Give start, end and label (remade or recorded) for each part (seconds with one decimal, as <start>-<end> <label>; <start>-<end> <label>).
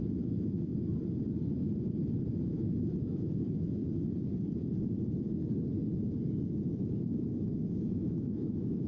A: 0.0-0.7 remade; 0.7-2.4 recorded; 2.4-3.8 remade; 3.8-7.3 recorded; 7.3-8.9 remade